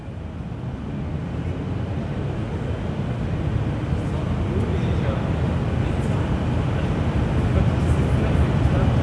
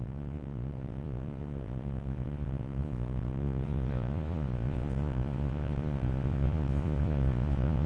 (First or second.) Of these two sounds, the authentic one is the first